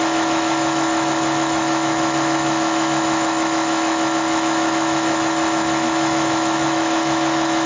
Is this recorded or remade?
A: remade